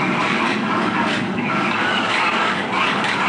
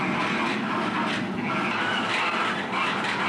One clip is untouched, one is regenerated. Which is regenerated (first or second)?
first